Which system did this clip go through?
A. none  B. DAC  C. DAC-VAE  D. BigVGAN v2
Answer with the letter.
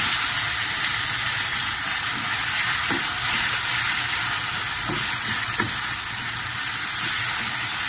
A